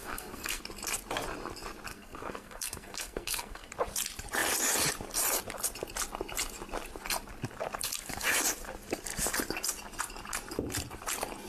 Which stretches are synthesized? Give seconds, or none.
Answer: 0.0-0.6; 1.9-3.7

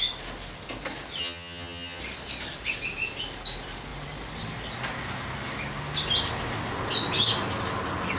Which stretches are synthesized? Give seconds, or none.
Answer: 1.2-2.0